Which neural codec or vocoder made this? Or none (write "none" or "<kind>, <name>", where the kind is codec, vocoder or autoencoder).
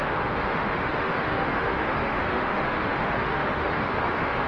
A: autoencoder, DAC-VAE